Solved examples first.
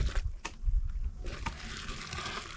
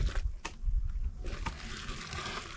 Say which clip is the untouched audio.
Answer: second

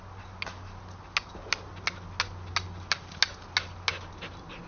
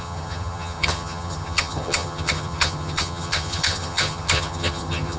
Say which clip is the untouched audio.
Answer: first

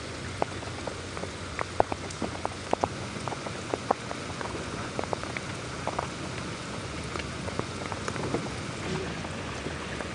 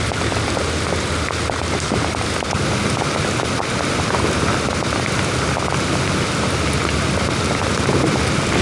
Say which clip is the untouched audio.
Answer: second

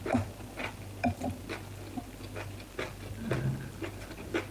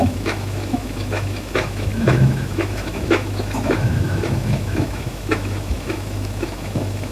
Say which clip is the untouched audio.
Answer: first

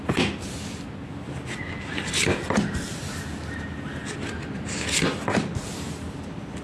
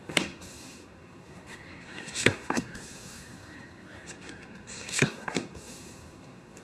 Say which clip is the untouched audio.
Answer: first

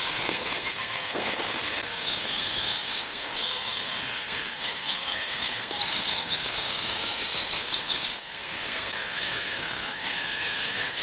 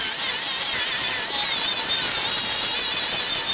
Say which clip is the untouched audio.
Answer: second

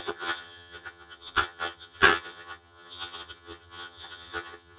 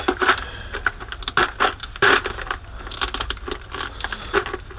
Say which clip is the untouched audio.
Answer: second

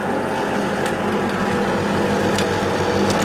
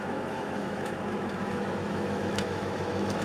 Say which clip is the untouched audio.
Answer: first